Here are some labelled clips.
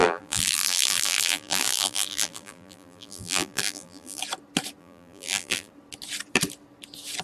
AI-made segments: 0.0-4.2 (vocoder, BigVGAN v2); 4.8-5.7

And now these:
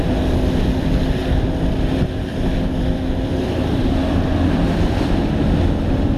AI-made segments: 2.3-5.2 (vocoder, BigVGAN v2)

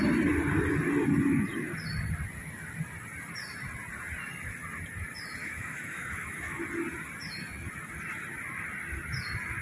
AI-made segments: 5.4-6.6 (autoencoder, DAC-VAE)

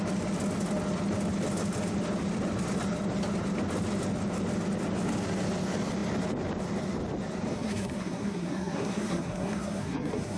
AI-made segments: 7.5-10.4 (codec, SNAC)

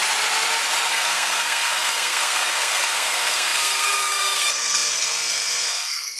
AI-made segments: 0.9-6.2 (codec, SNAC)

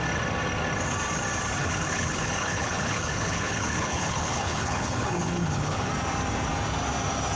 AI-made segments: 1.6-5.9 (codec, HILCodec)

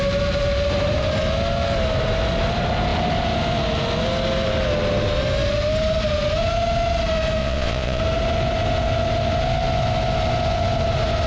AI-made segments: 7.4-8.0 (vocoder, Vocos)

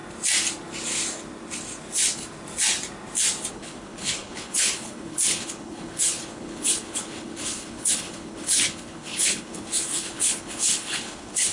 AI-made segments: 3.5-11.5 (codec, HILCodec)